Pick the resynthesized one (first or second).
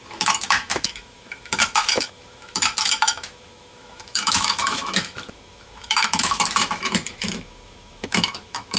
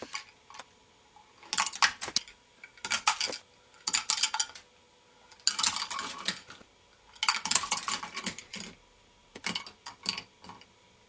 first